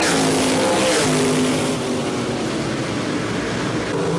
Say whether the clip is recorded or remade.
recorded